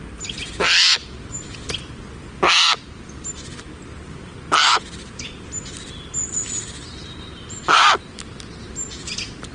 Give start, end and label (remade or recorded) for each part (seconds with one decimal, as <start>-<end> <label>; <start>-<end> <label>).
0.0-6.9 recorded; 6.9-7.9 remade; 7.9-9.5 recorded